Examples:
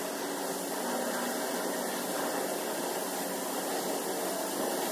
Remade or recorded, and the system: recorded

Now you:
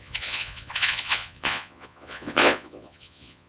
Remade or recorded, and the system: remade, vocoder, Vocos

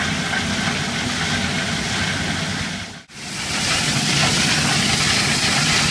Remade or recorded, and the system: recorded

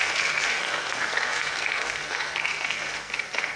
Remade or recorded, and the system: remade, codec, SNAC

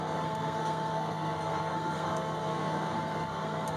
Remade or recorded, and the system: remade, codec, SNAC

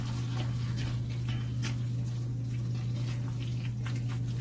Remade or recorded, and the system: recorded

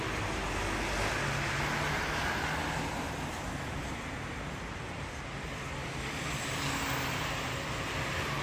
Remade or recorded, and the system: recorded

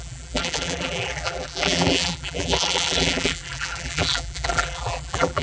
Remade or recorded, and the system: remade, vocoder, BigVGAN v2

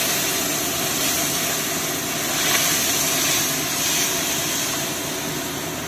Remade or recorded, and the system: recorded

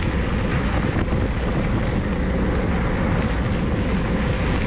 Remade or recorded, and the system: recorded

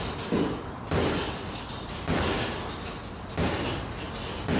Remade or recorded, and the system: recorded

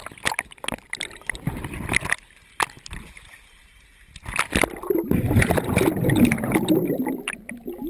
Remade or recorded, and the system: remade, vocoder, BigVGAN v2